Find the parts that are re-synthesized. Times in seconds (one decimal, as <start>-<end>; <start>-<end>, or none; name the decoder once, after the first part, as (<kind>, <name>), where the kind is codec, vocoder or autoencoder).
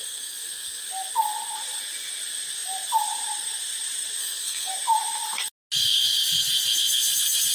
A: 0.0-0.9 (codec, SNAC); 4.2-4.7